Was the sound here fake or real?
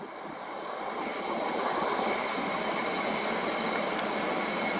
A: real